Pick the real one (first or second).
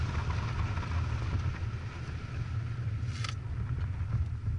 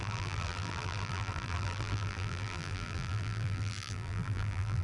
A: first